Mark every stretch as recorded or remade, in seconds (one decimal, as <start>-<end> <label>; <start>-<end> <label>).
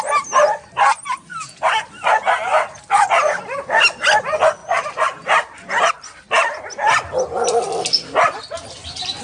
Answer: 0.0-2.5 recorded; 2.5-3.4 remade; 3.4-9.2 recorded